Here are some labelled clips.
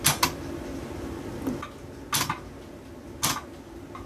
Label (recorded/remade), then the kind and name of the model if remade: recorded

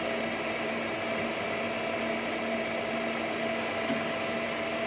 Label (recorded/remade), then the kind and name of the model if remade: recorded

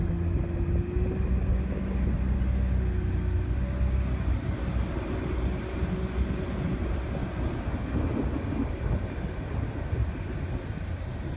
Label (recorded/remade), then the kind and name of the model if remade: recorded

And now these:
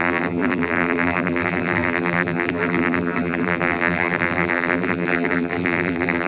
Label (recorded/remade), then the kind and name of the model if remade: remade, vocoder, BigVGAN v2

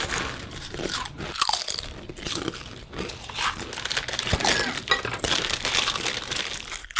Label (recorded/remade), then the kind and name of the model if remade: recorded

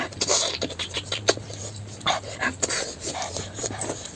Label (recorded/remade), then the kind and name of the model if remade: recorded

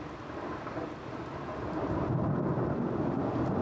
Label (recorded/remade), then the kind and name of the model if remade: recorded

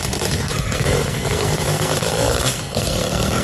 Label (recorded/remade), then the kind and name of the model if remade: remade, codec, SNAC